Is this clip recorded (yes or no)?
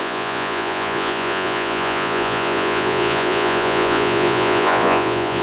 no